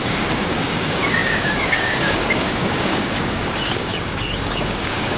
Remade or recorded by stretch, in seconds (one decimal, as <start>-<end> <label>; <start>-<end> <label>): 0.0-5.2 remade